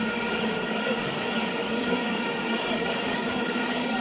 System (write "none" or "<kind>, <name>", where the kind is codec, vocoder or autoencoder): codec, DAC